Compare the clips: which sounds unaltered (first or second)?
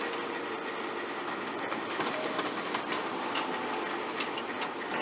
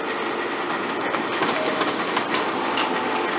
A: second